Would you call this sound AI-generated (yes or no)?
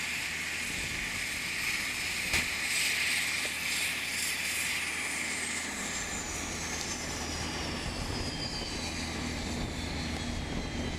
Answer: no